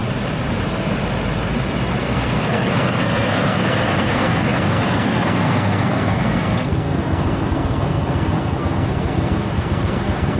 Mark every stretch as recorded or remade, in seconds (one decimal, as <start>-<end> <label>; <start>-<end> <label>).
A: 0.0-2.0 recorded; 2.0-10.4 remade

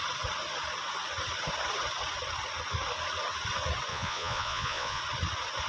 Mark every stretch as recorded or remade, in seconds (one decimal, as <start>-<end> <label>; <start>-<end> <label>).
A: 0.0-3.9 recorded; 3.9-5.0 remade; 5.0-5.7 recorded

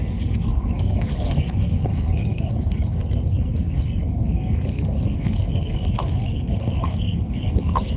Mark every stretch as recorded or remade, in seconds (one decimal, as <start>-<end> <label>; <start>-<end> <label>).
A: 0.0-8.0 remade

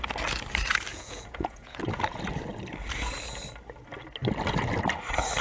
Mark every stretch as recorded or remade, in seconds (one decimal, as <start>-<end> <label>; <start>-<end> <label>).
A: 0.0-0.9 recorded; 0.9-1.8 remade; 1.8-5.4 recorded

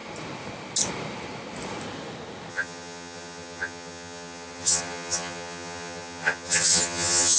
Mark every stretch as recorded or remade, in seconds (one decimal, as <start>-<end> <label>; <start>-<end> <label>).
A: 0.0-2.5 recorded; 2.5-7.4 remade